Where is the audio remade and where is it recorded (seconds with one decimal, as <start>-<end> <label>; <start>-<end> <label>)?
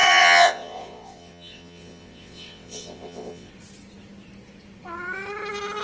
0.0-3.5 remade; 3.5-5.8 recorded